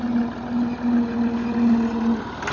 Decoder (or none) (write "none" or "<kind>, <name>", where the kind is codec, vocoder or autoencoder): none